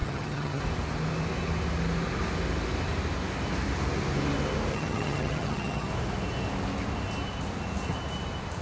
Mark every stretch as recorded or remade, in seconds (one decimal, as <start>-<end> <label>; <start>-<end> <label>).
0.0-0.6 remade; 0.6-4.7 recorded; 4.7-5.9 remade; 5.9-8.6 recorded